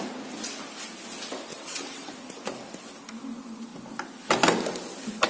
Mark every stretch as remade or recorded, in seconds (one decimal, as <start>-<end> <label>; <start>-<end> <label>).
0.0-1.5 recorded; 1.5-2.1 remade; 2.1-5.3 recorded